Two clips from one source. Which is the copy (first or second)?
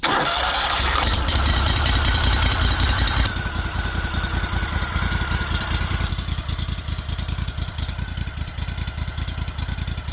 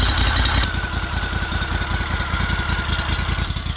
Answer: first